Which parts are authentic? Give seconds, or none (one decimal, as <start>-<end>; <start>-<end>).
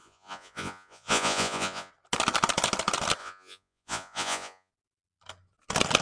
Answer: 1.9-3.2; 4.7-6.0